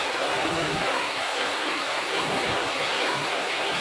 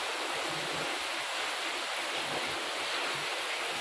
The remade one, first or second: first